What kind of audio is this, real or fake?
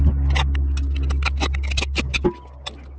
real